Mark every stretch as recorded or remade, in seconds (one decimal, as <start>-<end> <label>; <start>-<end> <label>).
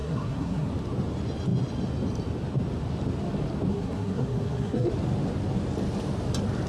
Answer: 0.0-0.7 remade; 0.7-3.7 recorded; 3.7-4.9 remade; 4.9-6.7 recorded